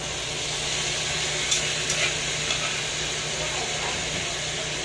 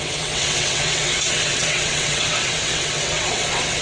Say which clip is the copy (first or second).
second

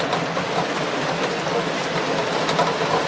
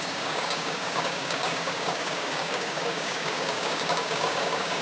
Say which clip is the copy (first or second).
second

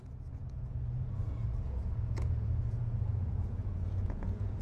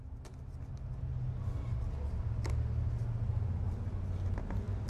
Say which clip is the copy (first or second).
first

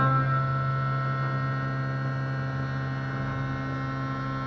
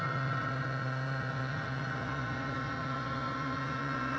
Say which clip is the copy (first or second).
second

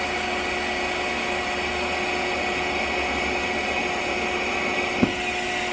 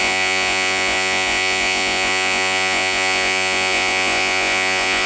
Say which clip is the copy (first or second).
second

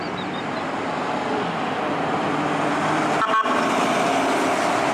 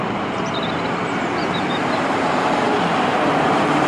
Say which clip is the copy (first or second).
second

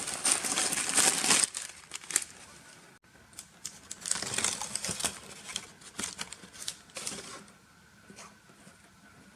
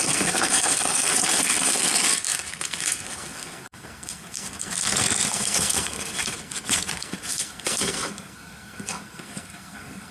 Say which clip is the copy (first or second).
second